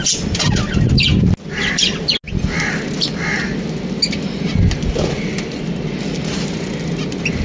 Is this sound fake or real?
real